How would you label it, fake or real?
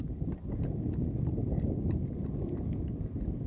real